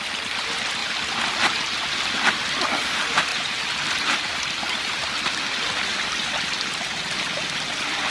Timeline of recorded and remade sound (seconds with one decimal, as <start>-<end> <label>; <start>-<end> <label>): 0.0-0.8 recorded; 0.8-1.6 remade; 1.6-3.3 recorded; 3.3-5.2 remade; 5.2-8.1 recorded